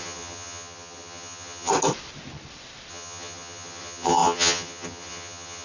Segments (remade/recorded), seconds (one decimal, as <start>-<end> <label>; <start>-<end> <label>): 0.0-1.7 remade; 1.7-2.9 recorded; 2.9-5.6 remade